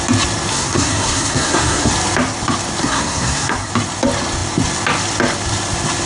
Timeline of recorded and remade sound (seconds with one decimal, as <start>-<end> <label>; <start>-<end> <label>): 0.0-0.5 recorded; 0.5-1.9 remade; 1.9-2.8 recorded; 2.8-3.7 remade; 3.7-6.1 recorded